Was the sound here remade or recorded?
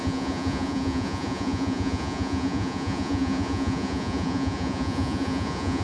remade